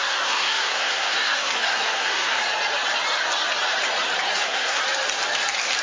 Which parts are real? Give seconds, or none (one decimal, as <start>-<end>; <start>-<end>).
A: 2.4-4.3; 4.8-5.8